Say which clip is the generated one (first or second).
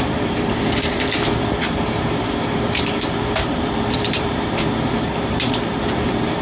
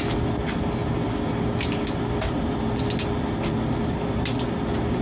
first